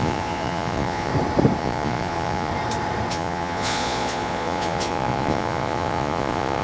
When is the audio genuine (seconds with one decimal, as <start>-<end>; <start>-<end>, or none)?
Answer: 1.1-1.6; 2.5-3.1